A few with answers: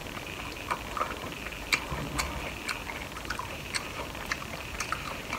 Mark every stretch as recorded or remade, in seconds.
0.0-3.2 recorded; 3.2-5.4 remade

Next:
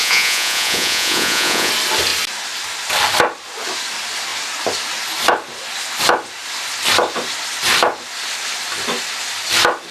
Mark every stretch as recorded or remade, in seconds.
0.0-1.7 remade; 1.7-9.9 recorded

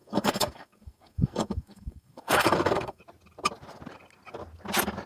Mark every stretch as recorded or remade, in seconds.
0.0-3.0 remade; 3.0-5.1 recorded

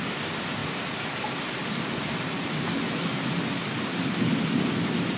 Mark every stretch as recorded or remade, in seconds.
0.0-5.2 recorded

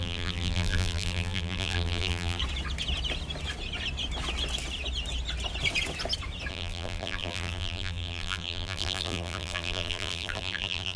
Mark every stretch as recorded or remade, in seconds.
0.0-2.4 remade; 2.4-6.5 recorded; 6.5-11.0 remade

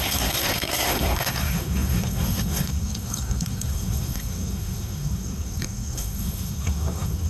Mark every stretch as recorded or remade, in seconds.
0.0-7.3 remade

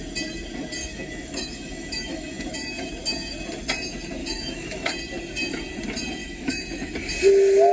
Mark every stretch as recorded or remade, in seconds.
0.0-0.8 recorded; 0.8-2.9 remade; 2.9-4.2 recorded; 4.2-4.9 remade; 4.9-6.2 recorded; 6.2-6.9 remade; 6.9-7.7 recorded